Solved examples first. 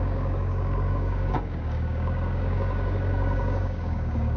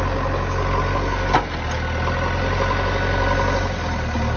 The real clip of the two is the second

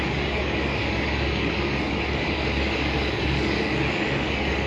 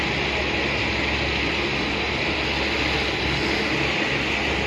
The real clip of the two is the second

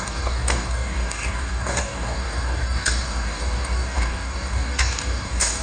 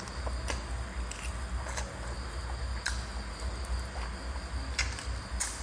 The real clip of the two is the second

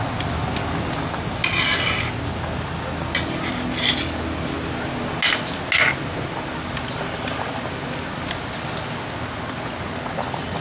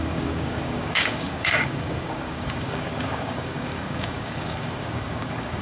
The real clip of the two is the first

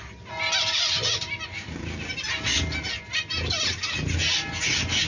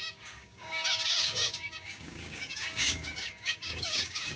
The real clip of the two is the first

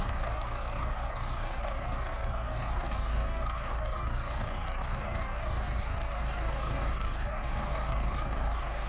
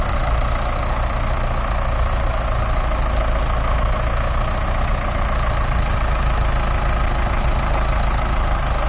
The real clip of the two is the second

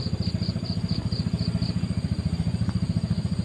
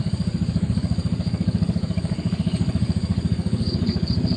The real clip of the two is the first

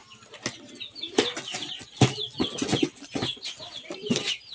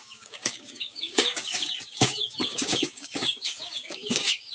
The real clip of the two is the first